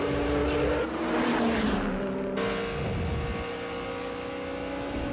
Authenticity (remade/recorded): recorded